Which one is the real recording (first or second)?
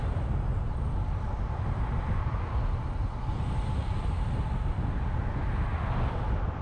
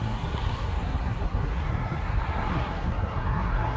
first